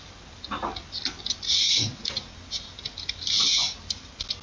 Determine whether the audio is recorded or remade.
recorded